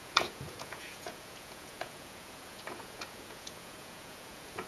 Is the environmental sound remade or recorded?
remade